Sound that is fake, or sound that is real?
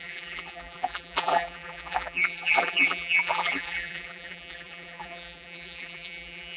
fake